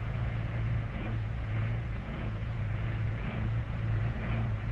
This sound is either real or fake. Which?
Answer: fake